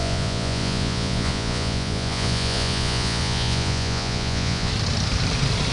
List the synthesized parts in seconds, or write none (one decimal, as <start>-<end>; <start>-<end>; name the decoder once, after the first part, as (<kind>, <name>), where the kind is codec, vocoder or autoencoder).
0.0-4.7 (vocoder, Vocos)